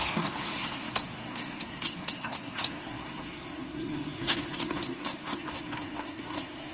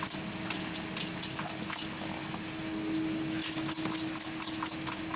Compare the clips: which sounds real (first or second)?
second